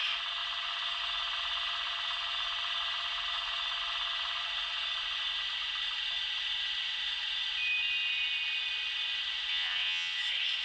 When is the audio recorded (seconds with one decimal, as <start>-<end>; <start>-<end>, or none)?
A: 0.0-9.5; 10.2-10.6